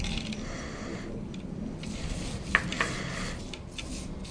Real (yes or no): yes